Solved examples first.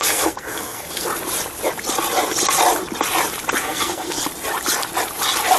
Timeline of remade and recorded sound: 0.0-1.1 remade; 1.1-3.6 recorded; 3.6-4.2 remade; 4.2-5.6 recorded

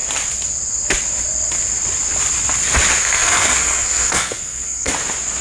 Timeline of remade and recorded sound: 0.0-3.0 recorded; 3.0-4.9 remade; 4.9-5.4 recorded

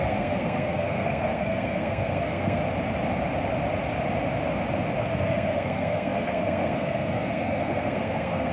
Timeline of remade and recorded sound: 0.0-2.6 remade; 2.6-5.0 recorded; 5.0-8.5 remade